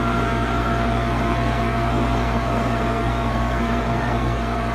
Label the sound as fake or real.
fake